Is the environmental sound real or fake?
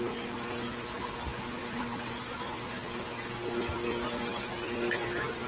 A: real